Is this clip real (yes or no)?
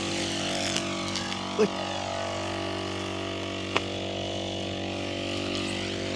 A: yes